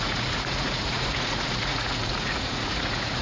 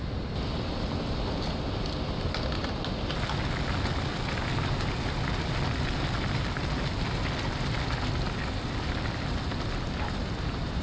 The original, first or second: second